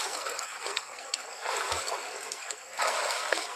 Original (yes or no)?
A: no